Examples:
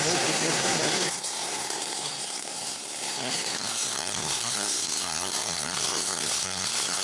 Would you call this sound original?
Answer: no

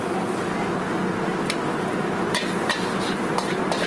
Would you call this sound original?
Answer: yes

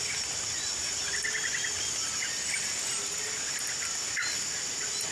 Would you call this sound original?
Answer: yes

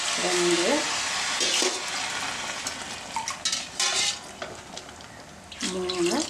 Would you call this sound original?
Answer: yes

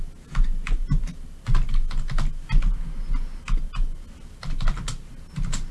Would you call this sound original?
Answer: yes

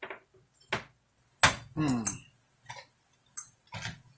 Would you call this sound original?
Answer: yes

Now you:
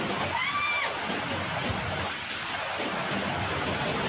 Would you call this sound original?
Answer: yes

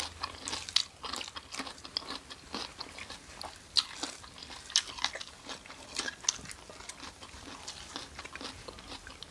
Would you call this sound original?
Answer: yes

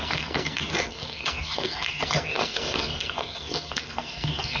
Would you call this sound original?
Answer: no